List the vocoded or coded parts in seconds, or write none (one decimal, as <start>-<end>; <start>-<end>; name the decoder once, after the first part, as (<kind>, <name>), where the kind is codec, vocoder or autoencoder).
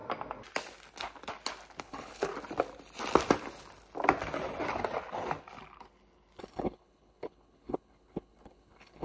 1.8-2.3 (codec, HILCodec); 6.4-9.0